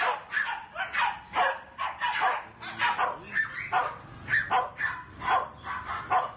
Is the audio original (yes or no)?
yes